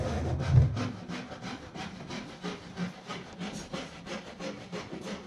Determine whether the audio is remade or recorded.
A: recorded